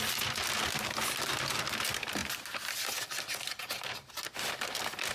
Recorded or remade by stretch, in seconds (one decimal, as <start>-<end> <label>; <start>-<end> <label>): 0.0-2.2 recorded; 2.2-4.2 remade; 4.2-5.1 recorded